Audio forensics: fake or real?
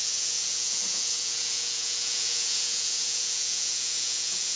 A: fake